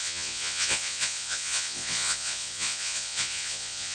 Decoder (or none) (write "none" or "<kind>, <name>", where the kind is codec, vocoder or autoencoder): vocoder, Vocos